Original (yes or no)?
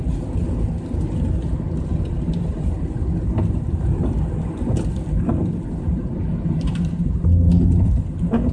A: yes